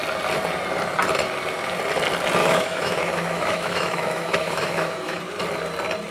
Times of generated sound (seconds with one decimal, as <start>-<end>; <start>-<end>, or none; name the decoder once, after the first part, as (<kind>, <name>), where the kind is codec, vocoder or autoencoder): 2.4-5.2 (autoencoder, DAC-VAE)